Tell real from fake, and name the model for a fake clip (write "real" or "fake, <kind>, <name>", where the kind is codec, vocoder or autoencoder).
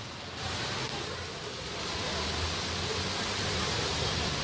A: real